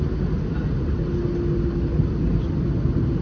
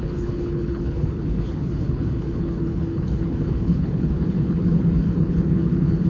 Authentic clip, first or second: first